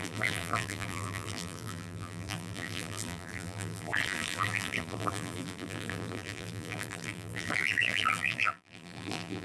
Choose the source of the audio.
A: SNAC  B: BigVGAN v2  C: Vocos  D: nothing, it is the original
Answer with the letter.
B